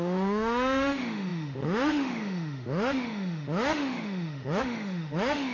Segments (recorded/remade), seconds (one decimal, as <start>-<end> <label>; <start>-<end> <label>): 0.0-5.5 remade